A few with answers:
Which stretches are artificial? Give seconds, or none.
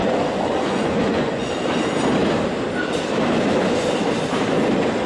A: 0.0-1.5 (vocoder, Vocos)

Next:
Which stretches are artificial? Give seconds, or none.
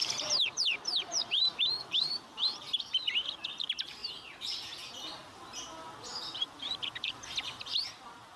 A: 0.0-4.0 (vocoder, BigVGAN v2)